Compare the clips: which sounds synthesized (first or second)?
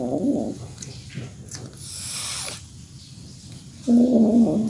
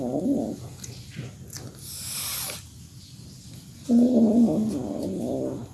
first